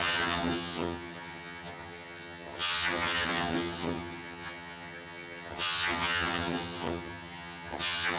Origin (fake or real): fake